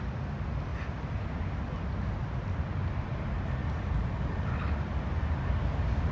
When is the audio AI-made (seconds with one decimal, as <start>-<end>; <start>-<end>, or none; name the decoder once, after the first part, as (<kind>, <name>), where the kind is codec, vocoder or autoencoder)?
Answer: none